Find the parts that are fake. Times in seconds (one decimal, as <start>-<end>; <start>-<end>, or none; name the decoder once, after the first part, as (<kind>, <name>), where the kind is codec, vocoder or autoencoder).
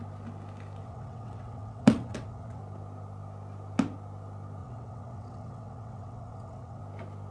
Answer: 0.8-2.6 (vocoder, WaveNeXt); 4.6-6.8